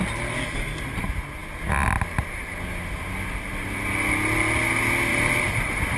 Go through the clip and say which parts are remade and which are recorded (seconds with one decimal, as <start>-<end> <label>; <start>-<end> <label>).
0.0-5.1 recorded; 5.1-6.0 remade